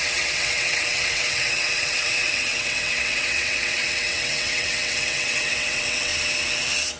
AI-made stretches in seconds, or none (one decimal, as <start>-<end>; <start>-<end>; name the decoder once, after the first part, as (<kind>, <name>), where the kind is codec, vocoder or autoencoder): 0.0-6.1 (vocoder, WaveNeXt)